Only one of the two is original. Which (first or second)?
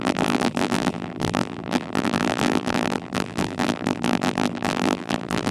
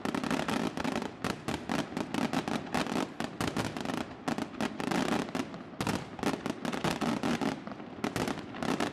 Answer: second